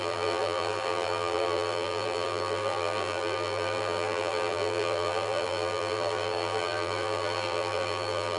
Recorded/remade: remade